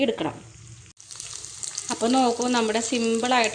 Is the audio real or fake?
real